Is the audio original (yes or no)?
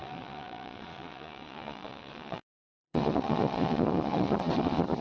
no